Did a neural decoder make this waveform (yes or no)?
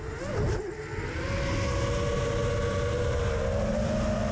no